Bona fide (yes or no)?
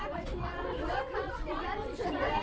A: no